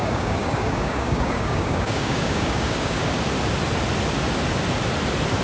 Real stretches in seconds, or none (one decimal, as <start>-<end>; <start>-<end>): 3.2-5.4